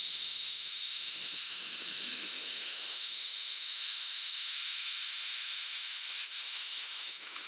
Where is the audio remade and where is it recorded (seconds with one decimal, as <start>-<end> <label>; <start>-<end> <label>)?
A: 0.0-7.5 remade

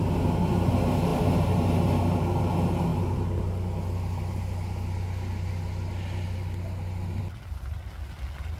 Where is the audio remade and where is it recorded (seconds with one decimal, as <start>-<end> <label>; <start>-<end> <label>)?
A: 0.0-8.6 recorded